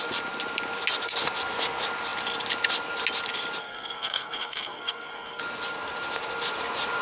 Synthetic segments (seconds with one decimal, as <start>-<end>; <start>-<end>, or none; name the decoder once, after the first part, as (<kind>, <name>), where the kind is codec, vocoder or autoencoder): 3.6-5.4 (codec, SNAC)